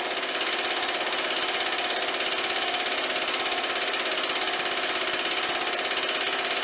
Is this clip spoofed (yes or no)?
no